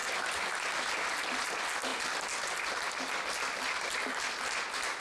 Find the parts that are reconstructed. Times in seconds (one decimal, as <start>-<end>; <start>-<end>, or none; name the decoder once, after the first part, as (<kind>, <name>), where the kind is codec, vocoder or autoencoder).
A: none